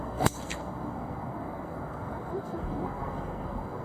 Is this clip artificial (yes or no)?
yes